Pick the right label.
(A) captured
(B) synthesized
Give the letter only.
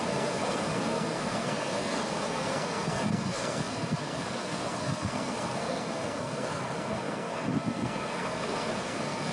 B